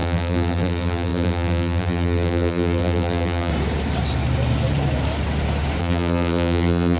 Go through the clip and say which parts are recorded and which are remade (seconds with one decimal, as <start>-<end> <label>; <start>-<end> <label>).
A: 0.0-3.5 remade; 3.5-5.8 recorded; 5.8-7.0 remade